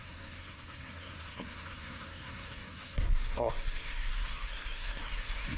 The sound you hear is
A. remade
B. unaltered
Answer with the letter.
A